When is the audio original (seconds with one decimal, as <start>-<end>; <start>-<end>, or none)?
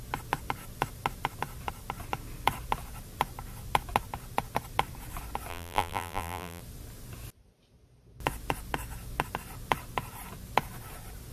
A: 0.0-5.5; 6.6-11.3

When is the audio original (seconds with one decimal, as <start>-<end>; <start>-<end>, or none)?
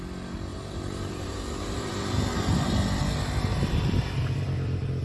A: 0.0-0.5; 2.7-3.5; 4.1-5.0